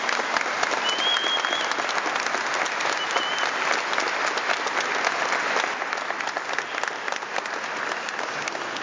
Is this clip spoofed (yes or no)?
no